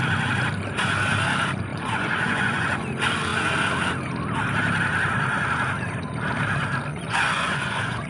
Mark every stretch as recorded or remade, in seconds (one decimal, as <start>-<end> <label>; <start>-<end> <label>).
0.0-1.7 recorded; 1.7-2.8 remade; 2.8-6.9 recorded; 6.9-8.1 remade